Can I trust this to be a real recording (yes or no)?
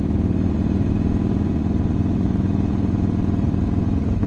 no